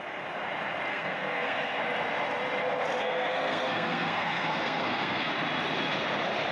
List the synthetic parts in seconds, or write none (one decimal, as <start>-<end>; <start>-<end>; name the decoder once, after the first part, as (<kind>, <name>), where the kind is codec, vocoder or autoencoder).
0.9-1.8 (codec, SNAC); 3.0-5.3